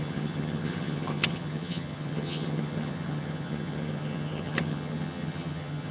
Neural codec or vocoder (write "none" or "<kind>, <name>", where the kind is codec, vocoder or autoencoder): vocoder, HiFi-GAN